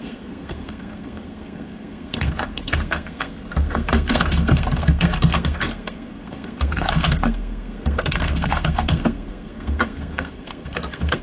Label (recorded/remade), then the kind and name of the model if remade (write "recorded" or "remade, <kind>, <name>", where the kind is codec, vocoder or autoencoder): remade, codec, SNAC